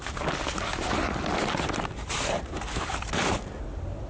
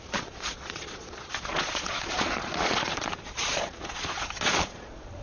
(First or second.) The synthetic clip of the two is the second